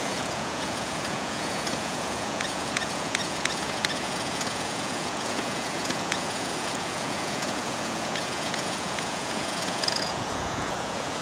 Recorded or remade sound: remade